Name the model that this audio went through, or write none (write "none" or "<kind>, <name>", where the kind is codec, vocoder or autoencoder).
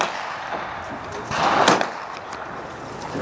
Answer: none